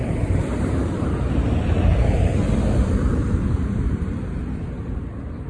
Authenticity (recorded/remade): remade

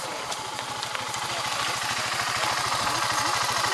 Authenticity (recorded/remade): remade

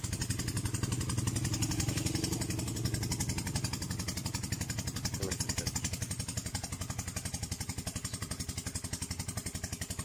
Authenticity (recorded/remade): recorded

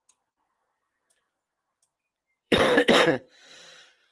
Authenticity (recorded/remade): remade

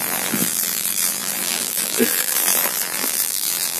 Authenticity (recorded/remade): remade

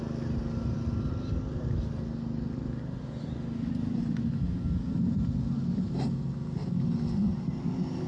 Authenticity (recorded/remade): recorded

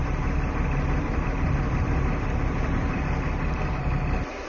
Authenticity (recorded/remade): remade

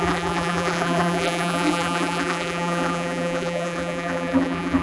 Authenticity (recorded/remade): remade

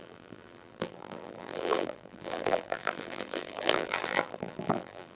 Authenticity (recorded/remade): remade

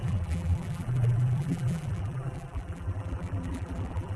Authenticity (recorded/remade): remade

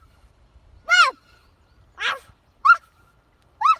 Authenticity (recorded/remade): remade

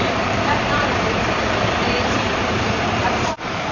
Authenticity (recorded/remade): remade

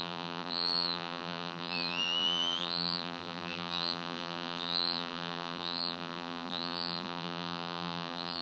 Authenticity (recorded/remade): remade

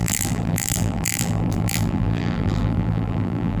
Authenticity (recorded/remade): remade